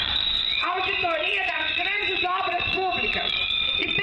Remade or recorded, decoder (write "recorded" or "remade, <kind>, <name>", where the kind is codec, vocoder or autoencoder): remade, vocoder, Vocos